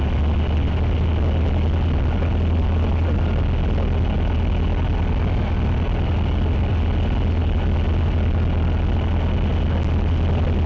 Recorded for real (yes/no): yes